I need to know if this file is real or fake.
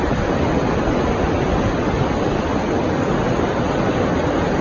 real